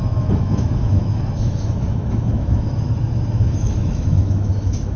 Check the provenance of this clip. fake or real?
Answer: fake